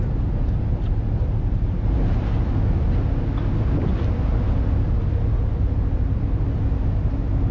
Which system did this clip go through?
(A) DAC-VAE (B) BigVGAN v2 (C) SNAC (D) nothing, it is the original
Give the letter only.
D